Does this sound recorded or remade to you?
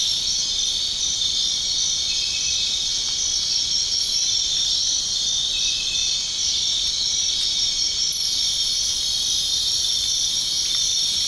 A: recorded